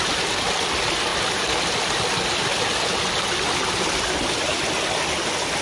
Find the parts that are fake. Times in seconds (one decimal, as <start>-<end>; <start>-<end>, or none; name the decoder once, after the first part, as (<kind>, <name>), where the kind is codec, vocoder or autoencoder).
1.1-4.4 (vocoder, BigVGAN v2)